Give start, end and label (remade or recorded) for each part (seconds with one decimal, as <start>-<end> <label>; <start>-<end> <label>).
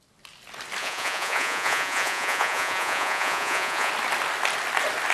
0.0-0.8 recorded; 0.8-3.9 remade; 3.9-5.1 recorded